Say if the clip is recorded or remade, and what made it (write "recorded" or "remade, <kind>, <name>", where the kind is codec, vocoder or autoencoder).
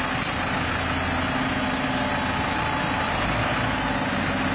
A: recorded